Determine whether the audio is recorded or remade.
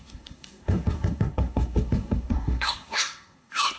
remade